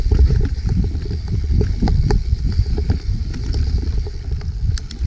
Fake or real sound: fake